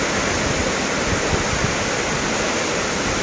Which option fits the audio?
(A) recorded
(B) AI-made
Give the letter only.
A